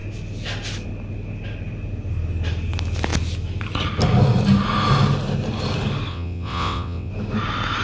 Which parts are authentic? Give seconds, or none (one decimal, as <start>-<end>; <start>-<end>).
0.0-6.1; 7.1-7.8